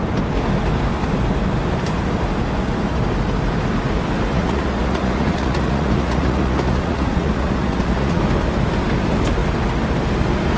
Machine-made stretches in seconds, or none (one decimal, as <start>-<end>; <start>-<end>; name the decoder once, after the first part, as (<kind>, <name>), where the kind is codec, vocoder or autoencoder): 4.3-8.2 (vocoder, Vocos)